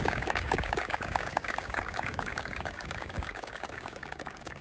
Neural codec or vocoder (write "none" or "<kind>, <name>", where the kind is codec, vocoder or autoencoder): codec, DAC